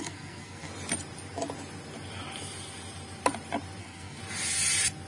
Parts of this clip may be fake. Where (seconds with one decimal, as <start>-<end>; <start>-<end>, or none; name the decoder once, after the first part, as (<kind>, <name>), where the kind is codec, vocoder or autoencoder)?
0.0-0.7 (codec, SNAC); 3.8-4.2